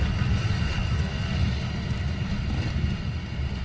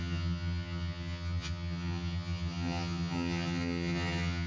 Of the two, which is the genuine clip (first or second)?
first